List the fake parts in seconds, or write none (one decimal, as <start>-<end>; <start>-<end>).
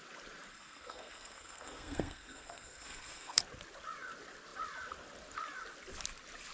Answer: 0.5-3.4